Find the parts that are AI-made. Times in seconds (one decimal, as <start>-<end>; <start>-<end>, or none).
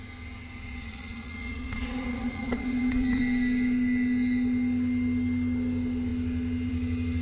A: 0.7-3.2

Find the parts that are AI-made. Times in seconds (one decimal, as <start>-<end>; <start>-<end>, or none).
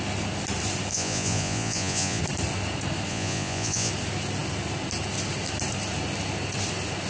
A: 0.9-2.2; 3.1-3.9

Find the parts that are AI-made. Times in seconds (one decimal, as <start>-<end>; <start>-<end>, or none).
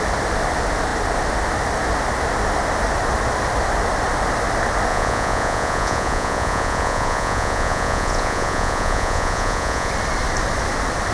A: 4.9-9.9